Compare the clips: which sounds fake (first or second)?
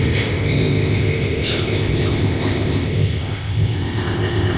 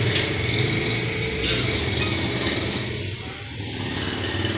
first